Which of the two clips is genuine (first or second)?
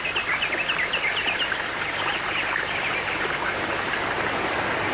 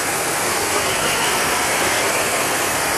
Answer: first